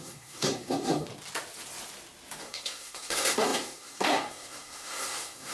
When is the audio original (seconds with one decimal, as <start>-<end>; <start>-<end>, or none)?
1.1-2.4